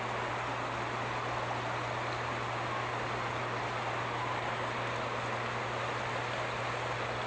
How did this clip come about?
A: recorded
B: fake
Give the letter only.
A